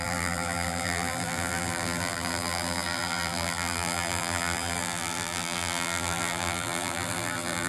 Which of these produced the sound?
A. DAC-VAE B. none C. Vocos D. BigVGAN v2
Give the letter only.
D